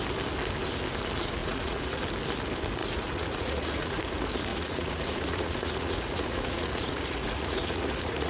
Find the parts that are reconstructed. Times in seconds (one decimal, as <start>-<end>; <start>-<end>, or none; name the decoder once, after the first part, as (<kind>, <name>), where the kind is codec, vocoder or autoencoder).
1.4-2.0 (vocoder, Vocos); 2.8-4.0; 4.5-8.3